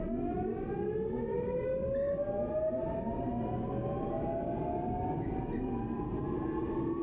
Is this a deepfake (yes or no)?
no